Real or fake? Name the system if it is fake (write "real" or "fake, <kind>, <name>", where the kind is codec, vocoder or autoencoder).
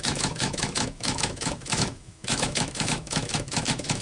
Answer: fake, autoencoder, DAC-VAE